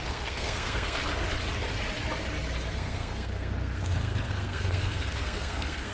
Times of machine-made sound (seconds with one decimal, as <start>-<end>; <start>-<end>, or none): 0.0-1.0; 2.7-5.9